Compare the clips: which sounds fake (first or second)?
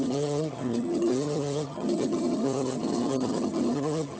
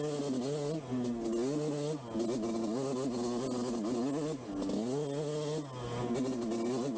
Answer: first